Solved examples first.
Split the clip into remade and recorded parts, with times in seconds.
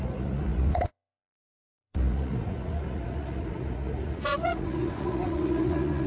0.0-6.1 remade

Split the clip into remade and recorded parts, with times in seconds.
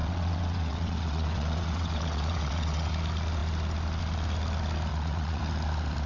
0.0-2.9 remade; 2.9-4.9 recorded; 4.9-5.4 remade; 5.4-6.1 recorded